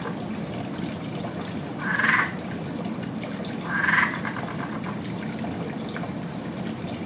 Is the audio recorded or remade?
recorded